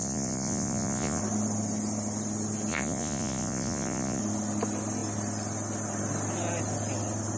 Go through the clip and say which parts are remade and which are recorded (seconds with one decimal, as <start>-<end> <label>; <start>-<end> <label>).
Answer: 0.0-1.2 remade; 1.2-2.7 recorded; 2.7-4.2 remade; 4.2-7.4 recorded